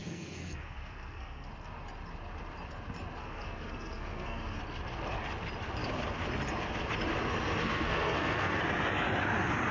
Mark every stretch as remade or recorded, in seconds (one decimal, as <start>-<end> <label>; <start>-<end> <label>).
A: 0.0-1.5 remade; 1.5-3.2 recorded; 3.2-4.6 remade; 4.6-7.6 recorded; 7.6-8.6 remade; 8.6-9.7 recorded